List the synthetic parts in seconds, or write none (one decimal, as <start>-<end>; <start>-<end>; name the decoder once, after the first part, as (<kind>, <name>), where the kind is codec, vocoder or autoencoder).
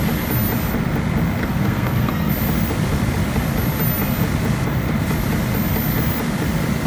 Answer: 1.4-2.3 (codec, SNAC)